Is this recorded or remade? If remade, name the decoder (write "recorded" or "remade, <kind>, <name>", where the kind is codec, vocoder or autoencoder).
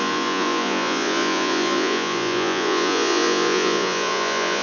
remade, vocoder, Vocos